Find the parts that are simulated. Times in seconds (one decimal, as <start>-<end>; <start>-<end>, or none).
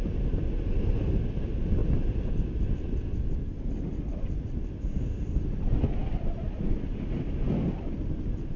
none